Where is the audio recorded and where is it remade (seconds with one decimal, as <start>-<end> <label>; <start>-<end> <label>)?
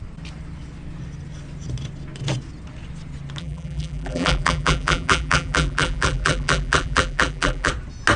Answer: 0.0-3.4 recorded; 3.4-7.7 remade; 7.7-8.2 recorded